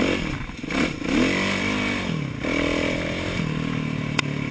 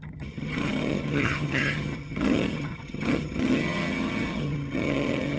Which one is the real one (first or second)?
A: first